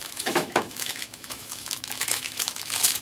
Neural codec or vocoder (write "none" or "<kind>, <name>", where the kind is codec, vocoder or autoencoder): autoencoder, DAC-VAE